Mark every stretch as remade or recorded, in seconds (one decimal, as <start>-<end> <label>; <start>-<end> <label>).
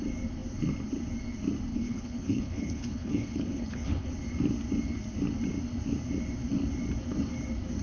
0.0-1.7 recorded; 1.7-4.1 remade; 4.1-7.8 recorded